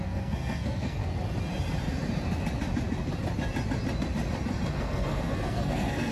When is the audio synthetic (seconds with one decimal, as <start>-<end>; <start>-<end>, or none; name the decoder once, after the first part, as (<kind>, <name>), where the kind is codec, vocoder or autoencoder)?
0.0-1.0 (codec, SNAC); 4.7-6.1

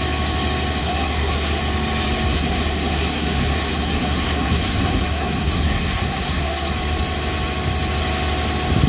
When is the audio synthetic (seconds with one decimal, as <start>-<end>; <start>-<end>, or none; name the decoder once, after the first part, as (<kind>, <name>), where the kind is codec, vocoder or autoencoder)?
0.8-1.6 (codec, SNAC); 2.3-6.7